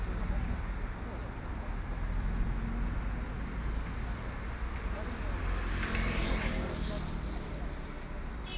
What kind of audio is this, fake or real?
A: real